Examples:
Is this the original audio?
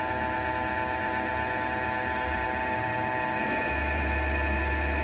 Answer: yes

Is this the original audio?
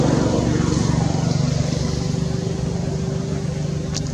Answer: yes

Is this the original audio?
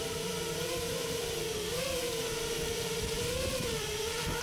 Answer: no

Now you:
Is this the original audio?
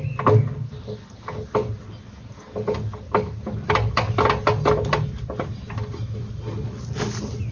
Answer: yes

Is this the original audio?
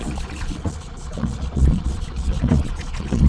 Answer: no